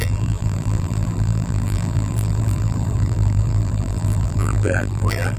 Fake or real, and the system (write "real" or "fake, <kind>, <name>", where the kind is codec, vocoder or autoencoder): fake, vocoder, BigVGAN v2